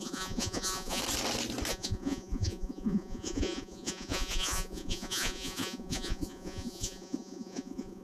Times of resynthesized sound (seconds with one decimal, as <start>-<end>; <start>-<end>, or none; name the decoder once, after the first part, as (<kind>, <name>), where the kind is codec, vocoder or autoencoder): 0.0-1.0 (vocoder, Vocos); 1.7-8.0